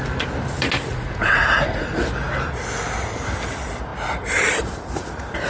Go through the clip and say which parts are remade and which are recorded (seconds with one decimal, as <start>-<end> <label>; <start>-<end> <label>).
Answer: 0.0-0.9 recorded; 0.9-2.0 remade; 2.0-5.5 recorded